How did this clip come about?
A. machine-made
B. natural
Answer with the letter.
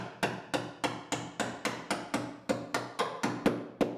B